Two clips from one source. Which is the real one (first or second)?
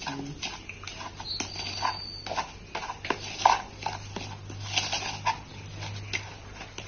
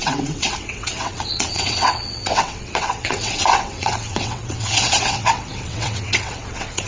first